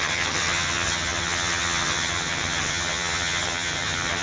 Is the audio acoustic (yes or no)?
no